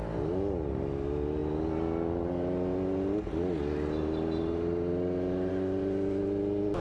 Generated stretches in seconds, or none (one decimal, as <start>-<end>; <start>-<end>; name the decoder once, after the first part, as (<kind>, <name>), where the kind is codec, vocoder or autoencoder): none